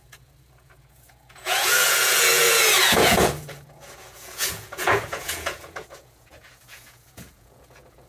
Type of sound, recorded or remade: remade